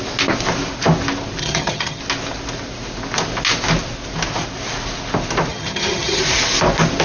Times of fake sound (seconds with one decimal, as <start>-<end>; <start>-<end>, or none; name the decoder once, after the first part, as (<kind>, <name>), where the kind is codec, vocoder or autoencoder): 1.4-2.0 (vocoder, HiFi-GAN); 5.5-6.2